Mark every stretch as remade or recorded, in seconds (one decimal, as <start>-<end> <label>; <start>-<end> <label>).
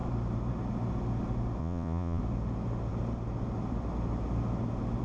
0.0-1.6 recorded; 1.6-2.2 remade; 2.2-5.0 recorded